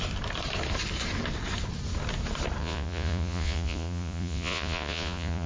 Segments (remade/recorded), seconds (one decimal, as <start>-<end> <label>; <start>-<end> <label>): 0.0-2.6 recorded; 2.6-5.5 remade